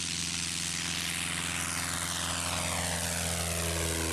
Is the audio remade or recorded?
recorded